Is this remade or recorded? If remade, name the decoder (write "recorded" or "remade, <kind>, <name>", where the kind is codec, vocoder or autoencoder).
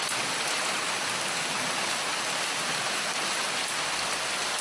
recorded